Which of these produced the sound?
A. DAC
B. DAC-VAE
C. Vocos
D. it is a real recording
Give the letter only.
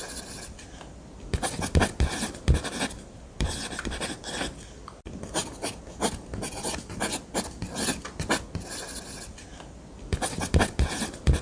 D